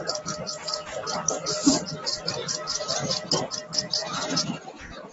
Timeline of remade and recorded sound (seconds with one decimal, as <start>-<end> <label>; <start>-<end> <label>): 0.0-4.1 recorded; 4.1-5.1 remade